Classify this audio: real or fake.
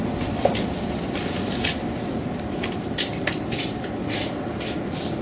real